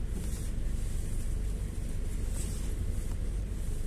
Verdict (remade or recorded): recorded